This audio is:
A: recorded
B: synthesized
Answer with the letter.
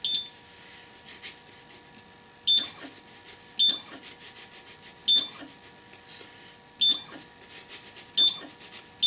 A